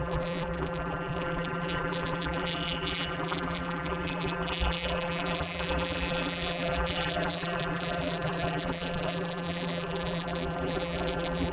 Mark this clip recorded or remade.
remade